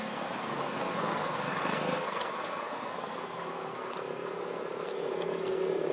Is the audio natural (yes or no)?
no